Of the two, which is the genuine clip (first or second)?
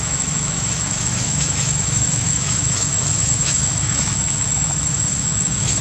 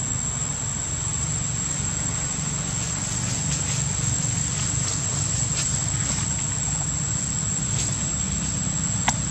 second